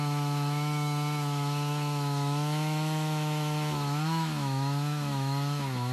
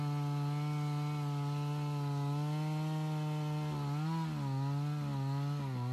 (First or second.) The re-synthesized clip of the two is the first